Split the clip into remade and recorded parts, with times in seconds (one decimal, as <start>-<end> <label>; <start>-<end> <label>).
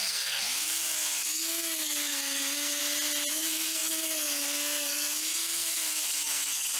0.0-2.8 remade; 2.8-3.3 recorded; 3.3-6.8 remade